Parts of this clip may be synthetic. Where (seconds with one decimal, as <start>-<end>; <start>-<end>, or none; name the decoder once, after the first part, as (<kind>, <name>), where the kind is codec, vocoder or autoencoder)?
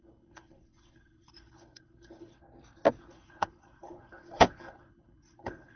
0.0-2.4 (codec, HILCodec); 3.0-5.8